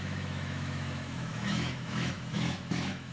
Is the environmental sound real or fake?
fake